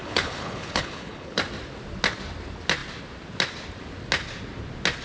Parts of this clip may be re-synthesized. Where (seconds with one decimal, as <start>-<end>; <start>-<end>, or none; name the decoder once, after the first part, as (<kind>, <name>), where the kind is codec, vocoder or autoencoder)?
0.0-1.4 (codec, HILCodec)